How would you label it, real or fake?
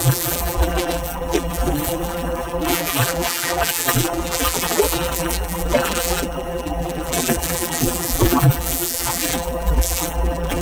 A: fake